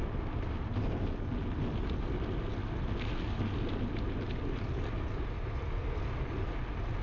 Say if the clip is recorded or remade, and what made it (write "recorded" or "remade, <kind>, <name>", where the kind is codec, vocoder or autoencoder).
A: recorded